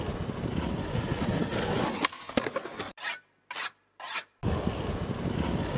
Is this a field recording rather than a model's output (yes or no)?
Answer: yes